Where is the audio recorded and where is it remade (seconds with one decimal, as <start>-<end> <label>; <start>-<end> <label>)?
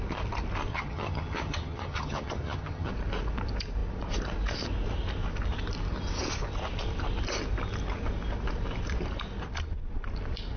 0.0-0.7 recorded; 0.7-2.9 remade; 2.9-10.6 recorded